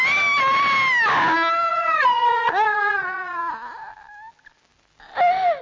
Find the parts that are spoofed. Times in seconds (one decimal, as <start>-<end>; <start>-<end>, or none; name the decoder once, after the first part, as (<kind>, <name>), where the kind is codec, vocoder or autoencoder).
1.7-3.4 (vocoder, Vocos)

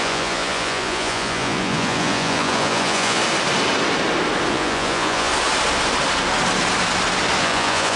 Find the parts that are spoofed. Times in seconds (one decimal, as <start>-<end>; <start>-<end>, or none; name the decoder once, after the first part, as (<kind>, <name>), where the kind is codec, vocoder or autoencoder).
0.0-3.2 (vocoder, Vocos); 4.5-5.3; 7.4-8.0

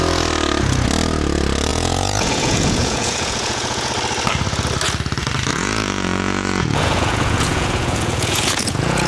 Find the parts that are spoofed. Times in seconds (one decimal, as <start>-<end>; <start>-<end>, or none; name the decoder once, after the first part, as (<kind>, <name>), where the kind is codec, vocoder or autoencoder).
1.7-3.9 (vocoder, Vocos); 5.5-9.1

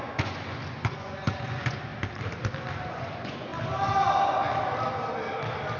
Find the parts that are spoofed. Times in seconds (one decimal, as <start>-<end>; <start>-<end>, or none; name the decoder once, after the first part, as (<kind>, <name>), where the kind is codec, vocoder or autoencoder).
0.0-1.9 (vocoder, Vocos); 2.9-3.5

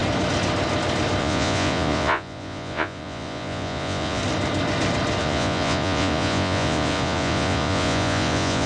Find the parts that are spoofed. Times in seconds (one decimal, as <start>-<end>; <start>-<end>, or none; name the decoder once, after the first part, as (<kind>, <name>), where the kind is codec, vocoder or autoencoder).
1.2-4.2 (vocoder, Vocos); 5.2-8.7

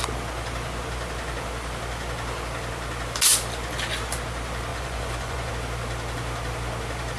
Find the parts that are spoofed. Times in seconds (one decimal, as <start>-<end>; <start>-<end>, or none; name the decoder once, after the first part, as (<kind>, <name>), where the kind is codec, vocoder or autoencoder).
4.7-5.5 (vocoder, Vocos)